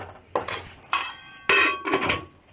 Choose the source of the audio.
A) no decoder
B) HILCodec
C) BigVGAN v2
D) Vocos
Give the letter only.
A